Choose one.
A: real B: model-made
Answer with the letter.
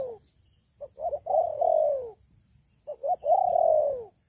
A